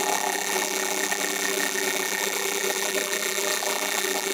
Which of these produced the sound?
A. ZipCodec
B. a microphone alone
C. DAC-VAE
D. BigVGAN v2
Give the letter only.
D